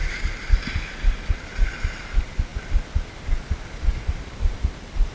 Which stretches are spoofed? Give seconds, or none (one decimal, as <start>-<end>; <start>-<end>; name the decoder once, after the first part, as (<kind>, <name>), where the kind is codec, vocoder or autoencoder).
0.0-0.5 (vocoder, BigVGAN v2); 3.9-4.6